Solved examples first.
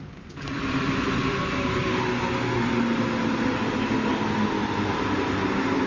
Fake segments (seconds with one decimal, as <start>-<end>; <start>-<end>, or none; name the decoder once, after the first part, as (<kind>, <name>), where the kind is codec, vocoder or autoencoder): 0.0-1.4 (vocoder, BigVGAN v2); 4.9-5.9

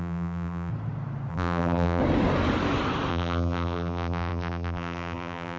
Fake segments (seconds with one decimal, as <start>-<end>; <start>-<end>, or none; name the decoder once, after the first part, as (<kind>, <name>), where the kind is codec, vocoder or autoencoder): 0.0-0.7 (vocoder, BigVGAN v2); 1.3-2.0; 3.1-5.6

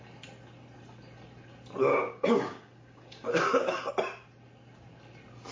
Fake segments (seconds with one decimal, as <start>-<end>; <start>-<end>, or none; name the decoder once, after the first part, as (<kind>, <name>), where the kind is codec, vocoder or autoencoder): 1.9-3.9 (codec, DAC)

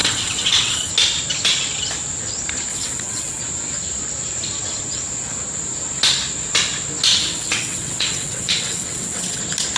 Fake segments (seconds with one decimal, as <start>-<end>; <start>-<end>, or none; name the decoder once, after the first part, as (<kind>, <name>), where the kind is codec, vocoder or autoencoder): 0.0-0.9 (vocoder, WaveNeXt); 2.7-3.4; 7.1-9.4

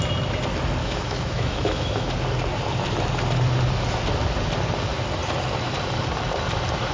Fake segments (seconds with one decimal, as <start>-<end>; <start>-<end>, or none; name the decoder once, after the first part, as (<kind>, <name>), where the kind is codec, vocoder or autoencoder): 0.8-2.1 (autoencoder, DAC-VAE)

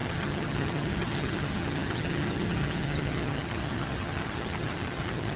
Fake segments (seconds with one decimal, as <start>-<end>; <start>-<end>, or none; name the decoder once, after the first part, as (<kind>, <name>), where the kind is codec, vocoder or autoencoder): 0.0-5.4 (vocoder, HiFi-GAN)